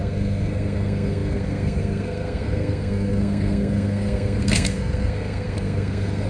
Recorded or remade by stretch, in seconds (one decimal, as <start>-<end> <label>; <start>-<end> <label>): 0.0-6.3 remade